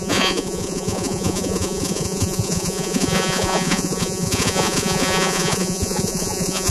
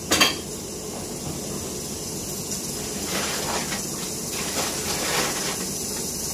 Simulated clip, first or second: first